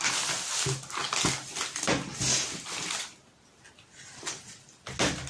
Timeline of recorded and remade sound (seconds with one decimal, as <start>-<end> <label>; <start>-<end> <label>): 0.0-5.3 recorded